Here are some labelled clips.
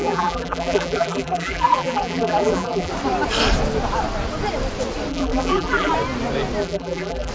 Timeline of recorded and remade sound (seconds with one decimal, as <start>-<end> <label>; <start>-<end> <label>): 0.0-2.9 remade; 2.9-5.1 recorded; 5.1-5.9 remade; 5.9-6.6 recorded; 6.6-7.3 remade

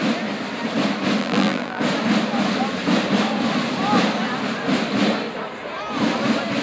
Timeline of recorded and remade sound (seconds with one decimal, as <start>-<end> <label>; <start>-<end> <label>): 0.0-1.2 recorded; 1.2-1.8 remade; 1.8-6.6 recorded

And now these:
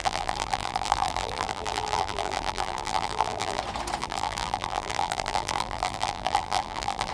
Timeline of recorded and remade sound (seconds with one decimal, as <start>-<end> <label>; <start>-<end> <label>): 0.0-3.6 remade; 3.6-4.0 recorded; 4.0-7.1 remade

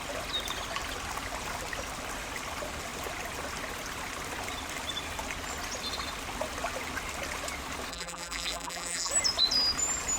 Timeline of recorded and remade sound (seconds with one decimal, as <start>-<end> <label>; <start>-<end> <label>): 0.0-7.9 recorded; 7.9-9.1 remade; 9.1-10.2 recorded

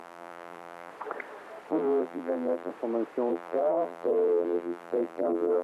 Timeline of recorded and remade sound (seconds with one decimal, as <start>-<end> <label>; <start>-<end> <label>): 0.0-0.9 remade; 0.9-1.7 recorded; 1.7-2.7 remade; 2.7-3.3 recorded; 3.3-5.6 remade

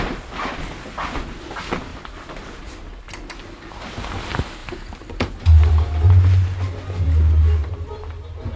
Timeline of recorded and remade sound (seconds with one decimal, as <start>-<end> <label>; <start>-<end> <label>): 0.0-1.9 recorded; 1.9-2.9 remade; 2.9-4.6 recorded; 4.6-5.7 remade; 5.7-7.6 recorded; 7.6-8.6 remade